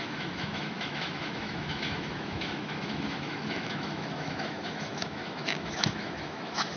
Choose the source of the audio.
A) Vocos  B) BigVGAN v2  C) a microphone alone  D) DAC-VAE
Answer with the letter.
D